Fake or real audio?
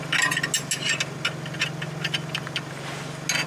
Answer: real